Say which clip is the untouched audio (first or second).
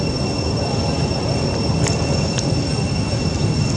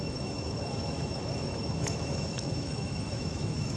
first